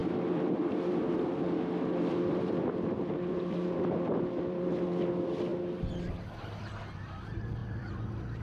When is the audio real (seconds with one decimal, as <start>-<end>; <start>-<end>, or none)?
4.7-7.6